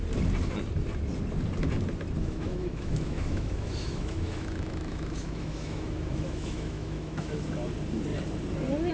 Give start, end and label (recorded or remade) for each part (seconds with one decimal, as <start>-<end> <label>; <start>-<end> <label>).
0.0-2.2 recorded; 2.2-7.4 remade; 7.4-8.9 recorded